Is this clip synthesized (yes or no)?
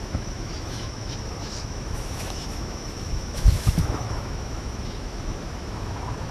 yes